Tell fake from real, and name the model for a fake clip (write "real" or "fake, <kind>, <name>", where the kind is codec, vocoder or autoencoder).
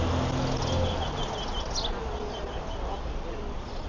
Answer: real